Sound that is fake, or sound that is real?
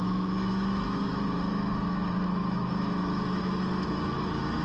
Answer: fake